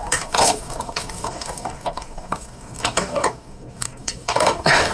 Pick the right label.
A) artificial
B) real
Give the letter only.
A